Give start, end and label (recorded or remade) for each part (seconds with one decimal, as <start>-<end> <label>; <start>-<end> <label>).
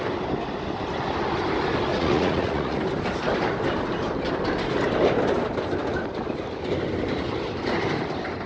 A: 0.0-1.9 recorded; 1.9-2.8 remade; 2.8-8.5 recorded